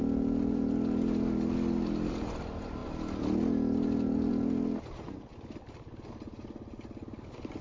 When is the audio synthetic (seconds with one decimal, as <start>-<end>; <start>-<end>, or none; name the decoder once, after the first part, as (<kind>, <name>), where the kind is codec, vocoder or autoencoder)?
none